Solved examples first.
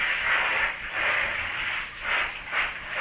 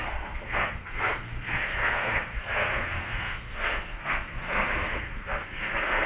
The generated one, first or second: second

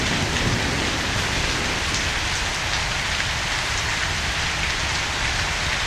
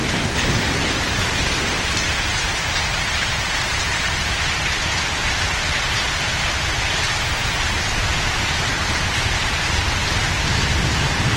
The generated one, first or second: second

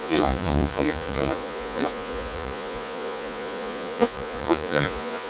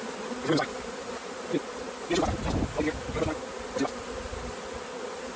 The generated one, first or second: first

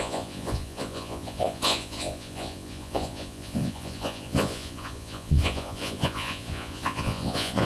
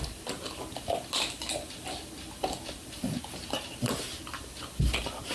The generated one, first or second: first